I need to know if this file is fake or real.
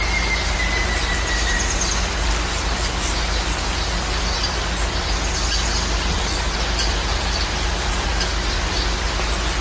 real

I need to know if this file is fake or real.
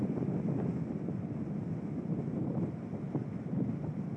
real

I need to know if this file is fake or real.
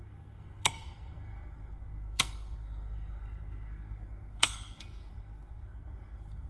fake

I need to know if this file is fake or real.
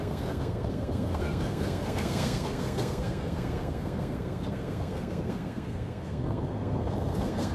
fake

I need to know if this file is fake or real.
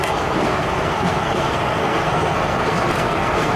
fake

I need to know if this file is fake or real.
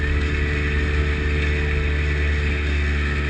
real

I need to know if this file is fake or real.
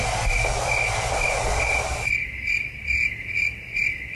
real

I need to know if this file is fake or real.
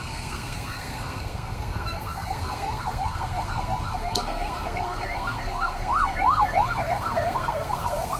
fake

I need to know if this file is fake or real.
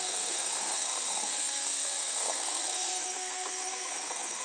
fake